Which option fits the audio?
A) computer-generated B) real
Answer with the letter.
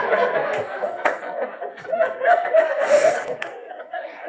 A